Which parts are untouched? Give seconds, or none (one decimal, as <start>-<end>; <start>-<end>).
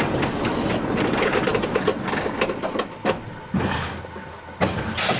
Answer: 0.0-5.2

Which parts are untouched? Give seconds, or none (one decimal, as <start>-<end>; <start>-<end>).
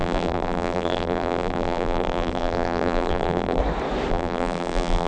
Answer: 3.6-4.1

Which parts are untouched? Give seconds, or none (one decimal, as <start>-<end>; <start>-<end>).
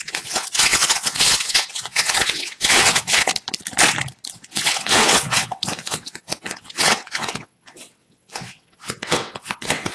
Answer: 3.3-4.3